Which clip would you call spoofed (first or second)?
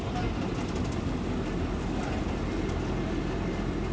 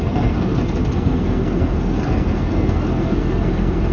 second